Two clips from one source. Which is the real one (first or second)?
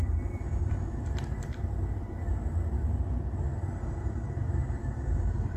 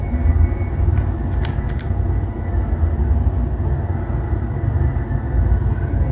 second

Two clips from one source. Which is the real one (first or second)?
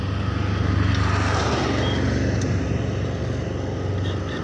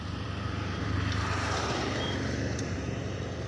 first